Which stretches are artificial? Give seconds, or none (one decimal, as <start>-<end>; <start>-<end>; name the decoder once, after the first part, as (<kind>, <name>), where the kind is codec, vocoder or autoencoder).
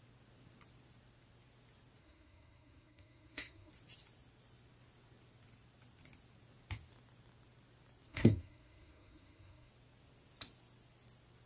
2.0-3.7 (codec, SNAC); 8.1-9.7